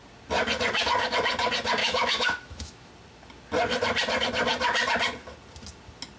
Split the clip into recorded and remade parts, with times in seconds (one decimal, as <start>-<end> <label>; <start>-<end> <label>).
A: 0.0-1.8 recorded; 1.8-2.9 remade; 2.9-6.2 recorded

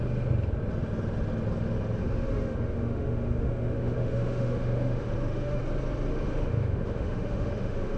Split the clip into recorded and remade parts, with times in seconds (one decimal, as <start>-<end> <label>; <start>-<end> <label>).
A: 0.0-2.0 recorded; 2.0-5.6 remade; 5.6-6.1 recorded; 6.1-8.0 remade